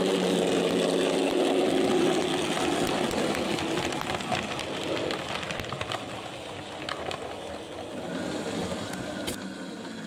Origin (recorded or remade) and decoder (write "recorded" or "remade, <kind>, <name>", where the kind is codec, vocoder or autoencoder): recorded